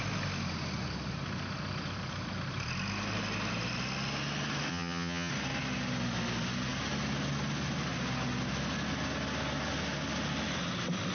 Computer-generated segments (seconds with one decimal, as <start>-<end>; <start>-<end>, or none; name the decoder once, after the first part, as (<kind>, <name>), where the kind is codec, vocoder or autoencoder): 4.7-5.3 (vocoder, HiFi-GAN)